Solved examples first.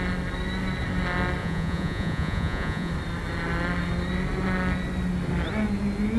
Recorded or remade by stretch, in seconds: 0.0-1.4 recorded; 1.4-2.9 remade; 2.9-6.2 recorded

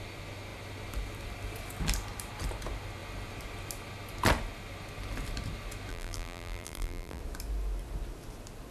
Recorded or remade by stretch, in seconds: 0.0-5.9 recorded; 5.9-7.2 remade; 7.2-8.7 recorded

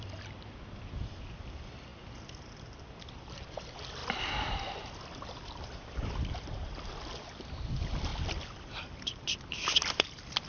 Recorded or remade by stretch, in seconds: 0.0-1.9 remade; 1.9-2.5 recorded; 2.5-4.0 remade; 4.0-5.1 recorded; 5.1-10.5 remade

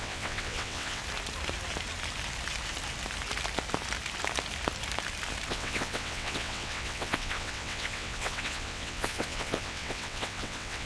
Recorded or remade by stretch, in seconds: 0.0-1.0 remade; 1.0-5.5 recorded; 5.5-10.9 remade

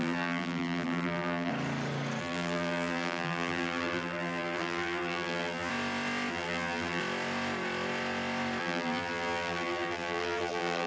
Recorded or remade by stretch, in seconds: 0.0-1.5 remade; 1.5-2.2 recorded; 2.2-5.7 remade; 5.7-6.3 recorded; 6.3-7.0 remade; 7.0-8.6 recorded; 8.6-10.9 remade

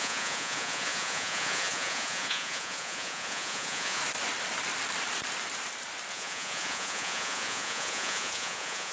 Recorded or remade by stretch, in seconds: 0.0-4.0 remade; 4.0-6.1 recorded; 6.1-8.9 remade

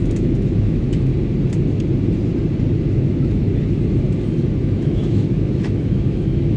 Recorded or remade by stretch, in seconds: 0.0-1.1 remade; 1.1-2.9 recorded; 2.9-3.5 remade; 3.5-4.6 recorded; 4.6-6.6 remade

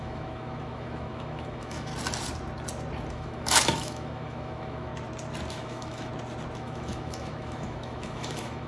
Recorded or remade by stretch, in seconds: 0.0-1.9 remade; 1.9-3.1 recorded; 3.1-4.9 remade; 4.9-5.5 recorded; 5.5-6.1 remade; 6.1-6.6 recorded; 6.6-8.7 remade